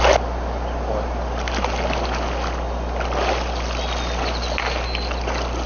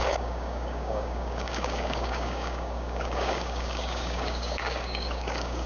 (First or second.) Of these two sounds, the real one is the first